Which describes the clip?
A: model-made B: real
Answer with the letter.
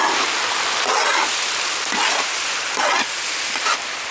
B